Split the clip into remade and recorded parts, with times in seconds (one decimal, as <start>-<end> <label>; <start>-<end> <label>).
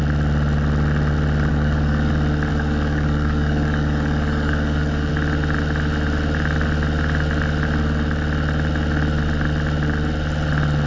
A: 0.0-1.5 recorded; 1.5-2.1 remade; 2.1-2.5 recorded; 2.5-5.1 remade; 5.1-10.9 recorded